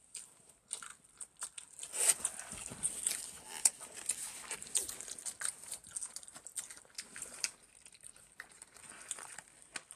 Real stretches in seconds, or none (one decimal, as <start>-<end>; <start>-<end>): 0.0-10.0